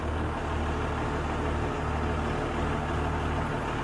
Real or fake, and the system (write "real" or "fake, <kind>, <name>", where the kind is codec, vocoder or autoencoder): real